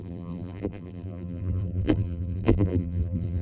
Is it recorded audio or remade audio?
remade